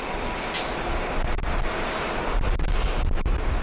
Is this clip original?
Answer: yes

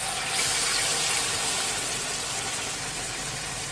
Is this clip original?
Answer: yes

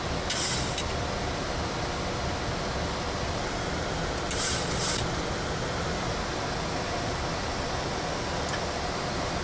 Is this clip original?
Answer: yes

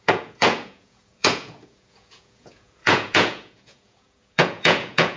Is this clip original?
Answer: no